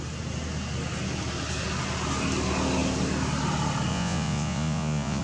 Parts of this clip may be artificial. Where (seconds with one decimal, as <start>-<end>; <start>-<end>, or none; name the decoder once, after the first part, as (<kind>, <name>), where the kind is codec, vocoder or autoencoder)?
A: 3.9-5.2 (vocoder, Vocos)